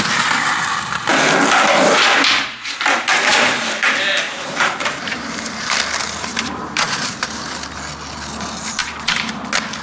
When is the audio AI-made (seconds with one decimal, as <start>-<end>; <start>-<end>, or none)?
3.3-5.8; 6.3-7.4; 8.8-9.3